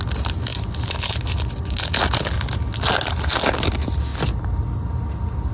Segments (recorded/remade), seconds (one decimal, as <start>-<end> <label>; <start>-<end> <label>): 0.0-5.5 recorded